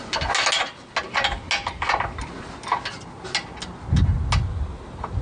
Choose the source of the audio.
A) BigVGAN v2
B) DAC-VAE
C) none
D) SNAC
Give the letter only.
C